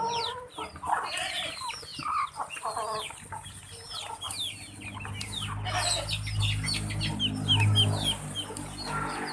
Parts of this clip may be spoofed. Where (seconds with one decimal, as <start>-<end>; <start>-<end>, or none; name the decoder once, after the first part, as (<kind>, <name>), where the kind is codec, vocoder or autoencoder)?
none